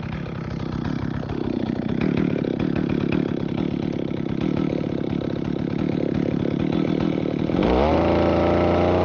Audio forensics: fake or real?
real